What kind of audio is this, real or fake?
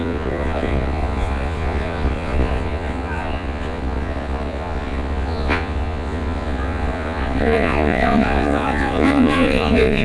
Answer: fake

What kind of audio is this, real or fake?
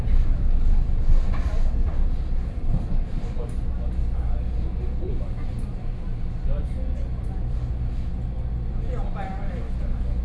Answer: real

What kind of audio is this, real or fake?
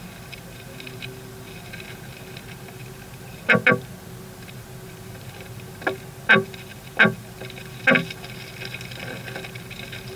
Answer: real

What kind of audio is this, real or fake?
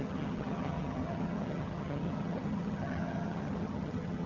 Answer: fake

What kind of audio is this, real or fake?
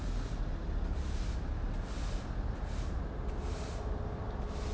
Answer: real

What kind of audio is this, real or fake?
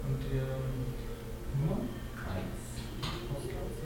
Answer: real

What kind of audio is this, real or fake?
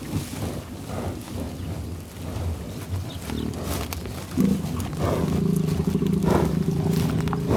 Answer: real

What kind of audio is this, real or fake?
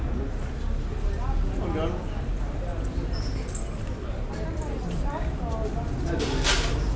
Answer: real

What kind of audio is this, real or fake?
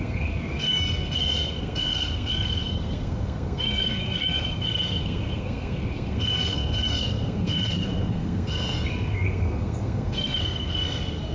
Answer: fake